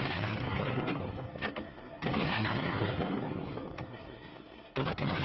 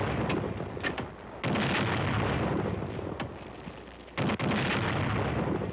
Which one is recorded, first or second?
second